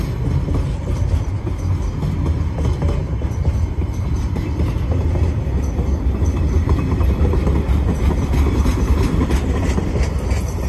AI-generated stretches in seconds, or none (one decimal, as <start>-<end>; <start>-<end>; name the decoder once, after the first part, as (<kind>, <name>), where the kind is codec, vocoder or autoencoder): none